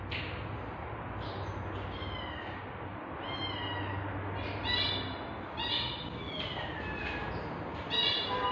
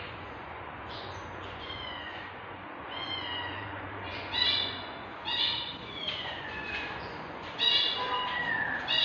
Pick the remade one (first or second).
second